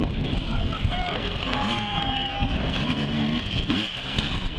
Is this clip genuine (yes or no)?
no